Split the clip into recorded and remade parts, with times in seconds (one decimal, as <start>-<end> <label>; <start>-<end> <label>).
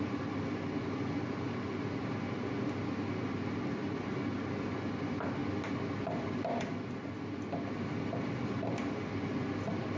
0.0-10.0 recorded